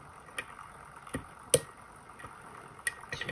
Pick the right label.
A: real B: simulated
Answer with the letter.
A